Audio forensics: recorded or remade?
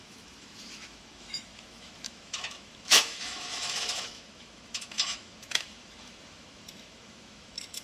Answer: remade